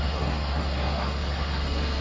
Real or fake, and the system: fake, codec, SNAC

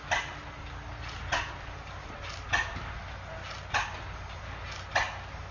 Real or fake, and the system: real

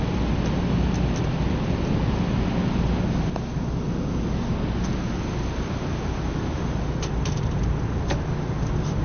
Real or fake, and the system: real